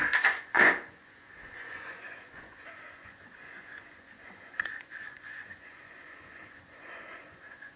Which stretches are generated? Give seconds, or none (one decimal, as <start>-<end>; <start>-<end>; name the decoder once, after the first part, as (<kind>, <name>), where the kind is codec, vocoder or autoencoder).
0.0-7.8 (vocoder, Vocos)

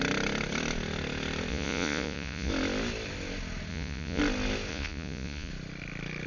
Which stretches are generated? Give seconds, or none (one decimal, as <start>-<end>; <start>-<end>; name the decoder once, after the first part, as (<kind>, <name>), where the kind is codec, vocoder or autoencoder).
1.5-2.5 (vocoder, Vocos); 3.7-4.2; 4.7-5.5